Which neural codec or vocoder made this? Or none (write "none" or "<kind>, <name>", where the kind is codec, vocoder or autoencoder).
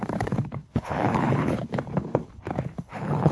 codec, HILCodec